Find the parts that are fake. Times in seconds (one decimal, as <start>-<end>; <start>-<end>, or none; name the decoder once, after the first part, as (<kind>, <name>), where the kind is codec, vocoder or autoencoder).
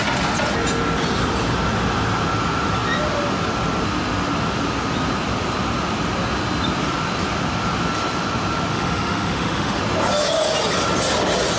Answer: 8.7-9.8 (autoencoder, DAC-VAE)